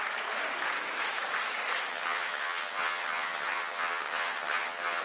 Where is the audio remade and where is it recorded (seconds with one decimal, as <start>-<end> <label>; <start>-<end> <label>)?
0.0-1.9 recorded; 1.9-5.0 remade